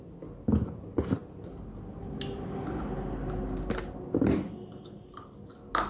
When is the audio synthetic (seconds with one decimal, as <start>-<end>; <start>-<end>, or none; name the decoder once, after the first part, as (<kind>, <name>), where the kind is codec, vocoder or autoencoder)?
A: none